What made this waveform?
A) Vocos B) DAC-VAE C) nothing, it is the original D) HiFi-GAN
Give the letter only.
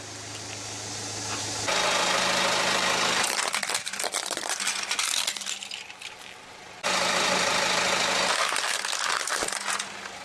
C